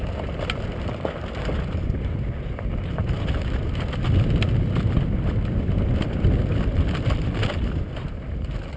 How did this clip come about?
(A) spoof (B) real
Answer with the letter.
B